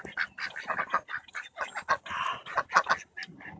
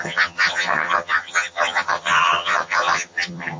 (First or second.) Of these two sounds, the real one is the first